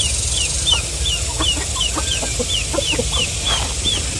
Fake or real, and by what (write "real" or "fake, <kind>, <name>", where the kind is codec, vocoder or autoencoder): real